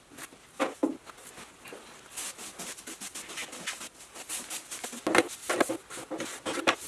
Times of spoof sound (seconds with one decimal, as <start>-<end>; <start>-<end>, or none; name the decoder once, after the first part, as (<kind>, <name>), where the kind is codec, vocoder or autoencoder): none